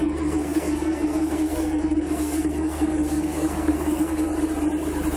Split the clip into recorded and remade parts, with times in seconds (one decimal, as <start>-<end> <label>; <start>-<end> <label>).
0.0-4.3 remade; 4.3-5.2 recorded